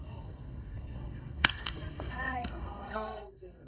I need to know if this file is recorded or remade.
remade